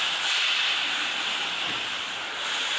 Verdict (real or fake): real